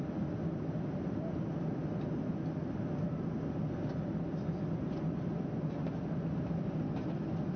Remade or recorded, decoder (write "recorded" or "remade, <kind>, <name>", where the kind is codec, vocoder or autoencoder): recorded